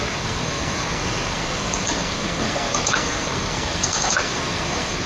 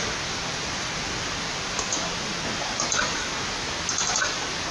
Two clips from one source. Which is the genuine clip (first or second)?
second